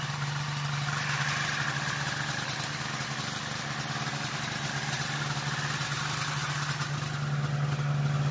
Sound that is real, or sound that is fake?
real